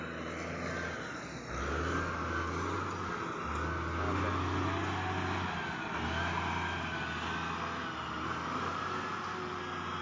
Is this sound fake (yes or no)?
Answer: no